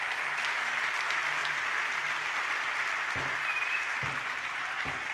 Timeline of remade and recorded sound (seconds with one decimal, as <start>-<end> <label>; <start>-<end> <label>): 0.0-5.1 recorded